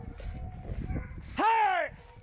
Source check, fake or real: real